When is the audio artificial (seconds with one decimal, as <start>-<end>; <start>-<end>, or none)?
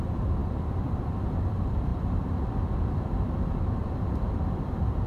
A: 0.0-5.1